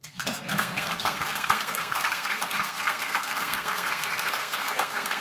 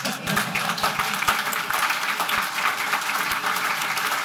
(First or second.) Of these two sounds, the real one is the second